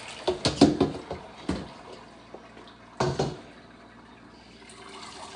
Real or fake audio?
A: real